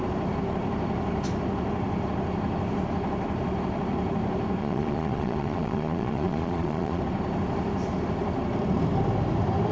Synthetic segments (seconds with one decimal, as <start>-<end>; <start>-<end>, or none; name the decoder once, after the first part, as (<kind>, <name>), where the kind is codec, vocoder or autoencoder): 4.6-7.0 (vocoder, Vocos)